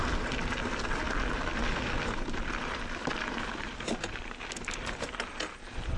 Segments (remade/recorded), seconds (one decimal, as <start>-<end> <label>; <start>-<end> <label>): 0.0-0.4 recorded; 0.4-1.0 remade; 1.0-1.5 recorded; 1.5-4.2 remade; 4.2-6.0 recorded